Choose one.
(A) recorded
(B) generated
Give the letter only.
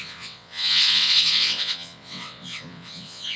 B